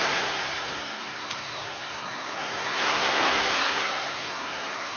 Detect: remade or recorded remade